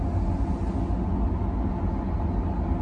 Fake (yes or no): no